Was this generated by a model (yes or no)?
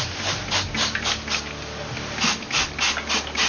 no